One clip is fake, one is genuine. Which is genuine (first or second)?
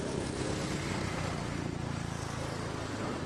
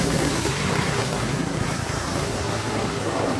first